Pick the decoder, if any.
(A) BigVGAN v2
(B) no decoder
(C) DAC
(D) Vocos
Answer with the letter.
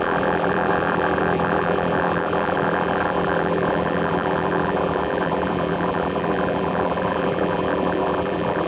A